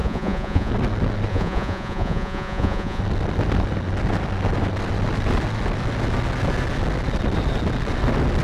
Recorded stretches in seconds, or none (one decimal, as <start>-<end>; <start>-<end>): 0.7-1.3; 3.0-8.4